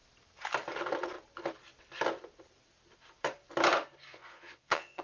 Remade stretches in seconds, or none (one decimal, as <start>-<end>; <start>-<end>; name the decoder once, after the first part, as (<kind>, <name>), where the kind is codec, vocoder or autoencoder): 4.1-5.0 (vocoder, Vocos)

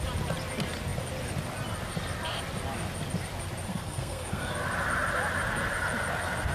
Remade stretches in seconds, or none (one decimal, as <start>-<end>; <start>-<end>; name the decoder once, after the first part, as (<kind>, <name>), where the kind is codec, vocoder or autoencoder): 3.7-4.5 (codec, SNAC)

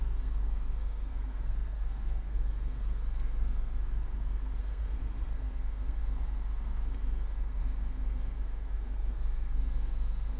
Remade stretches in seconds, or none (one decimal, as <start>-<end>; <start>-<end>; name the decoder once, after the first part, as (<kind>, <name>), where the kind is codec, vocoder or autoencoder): 0.0-10.4 (codec, SNAC)

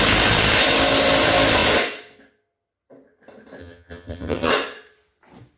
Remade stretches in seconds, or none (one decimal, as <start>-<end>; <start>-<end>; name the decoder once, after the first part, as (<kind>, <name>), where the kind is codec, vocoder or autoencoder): 3.6-4.5 (vocoder, HiFi-GAN)

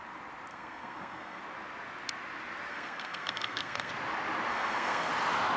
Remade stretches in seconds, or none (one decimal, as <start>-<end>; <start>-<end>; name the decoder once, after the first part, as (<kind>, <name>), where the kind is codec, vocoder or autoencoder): 0.5-1.4 (codec, SNAC); 2.7-3.9; 4.5-5.1